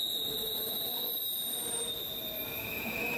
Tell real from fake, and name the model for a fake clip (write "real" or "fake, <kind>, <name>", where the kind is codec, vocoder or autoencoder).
real